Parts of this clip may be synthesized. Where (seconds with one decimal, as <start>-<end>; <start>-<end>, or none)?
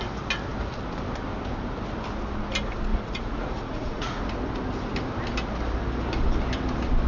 2.9-4.2